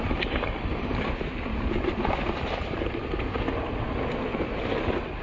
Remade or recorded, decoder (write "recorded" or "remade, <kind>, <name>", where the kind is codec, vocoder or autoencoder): recorded